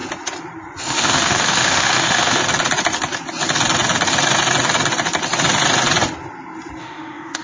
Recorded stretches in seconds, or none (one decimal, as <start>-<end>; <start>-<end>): 0.0-0.8; 2.4-6.8